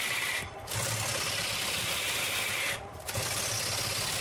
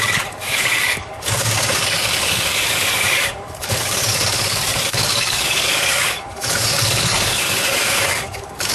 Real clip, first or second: first